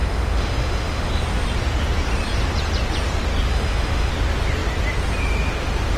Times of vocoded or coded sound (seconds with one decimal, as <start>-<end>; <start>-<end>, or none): 0.0-1.1; 3.5-4.1